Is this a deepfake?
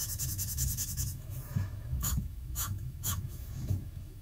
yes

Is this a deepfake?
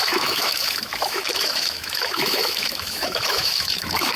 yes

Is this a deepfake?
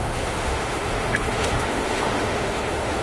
yes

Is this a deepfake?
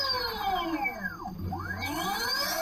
no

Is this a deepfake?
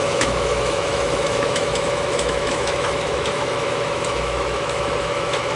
yes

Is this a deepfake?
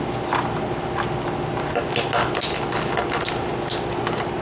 no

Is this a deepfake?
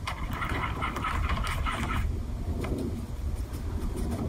no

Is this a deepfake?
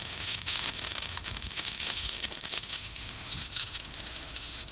yes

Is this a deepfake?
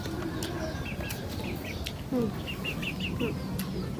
no